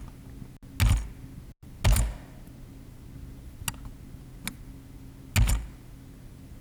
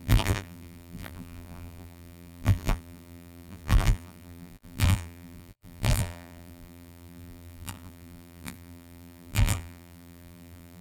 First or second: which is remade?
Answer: second